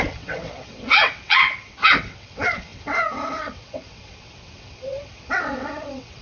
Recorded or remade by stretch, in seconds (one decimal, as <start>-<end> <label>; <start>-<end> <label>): 0.0-6.2 remade